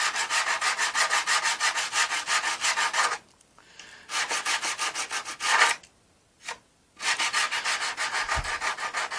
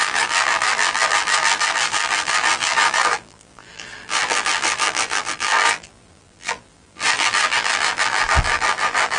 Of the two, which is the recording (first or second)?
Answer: first